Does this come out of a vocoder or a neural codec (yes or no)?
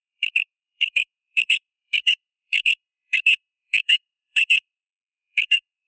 yes